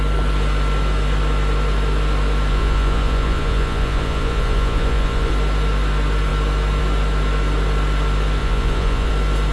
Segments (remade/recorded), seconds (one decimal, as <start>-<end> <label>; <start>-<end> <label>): 0.0-2.5 recorded; 2.5-5.3 remade; 5.3-8.4 recorded; 8.4-9.1 remade; 9.1-9.5 recorded